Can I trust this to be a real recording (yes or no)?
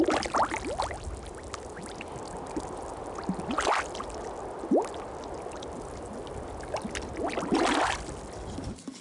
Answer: yes